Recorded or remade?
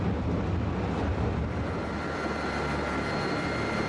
recorded